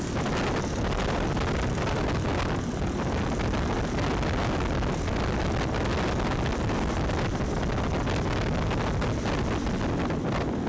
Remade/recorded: recorded